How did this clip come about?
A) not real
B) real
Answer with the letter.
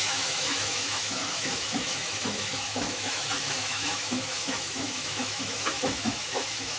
A